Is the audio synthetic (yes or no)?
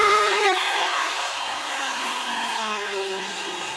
yes